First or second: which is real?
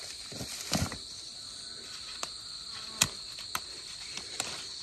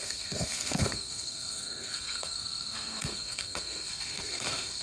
first